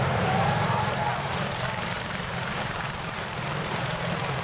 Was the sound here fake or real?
fake